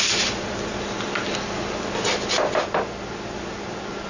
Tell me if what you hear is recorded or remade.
recorded